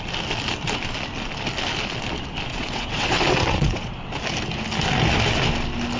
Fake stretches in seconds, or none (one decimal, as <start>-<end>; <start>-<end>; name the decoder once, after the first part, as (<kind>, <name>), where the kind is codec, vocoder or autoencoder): 2.5-4.1 (vocoder, WaveNeXt)